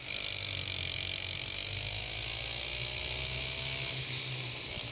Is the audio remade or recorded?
recorded